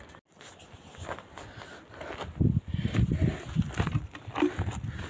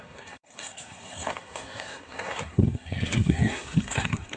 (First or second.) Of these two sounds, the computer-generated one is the second